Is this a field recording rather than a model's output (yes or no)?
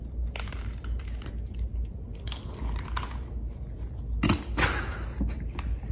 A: yes